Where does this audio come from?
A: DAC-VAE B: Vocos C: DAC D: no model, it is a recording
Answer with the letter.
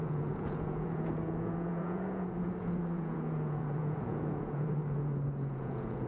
B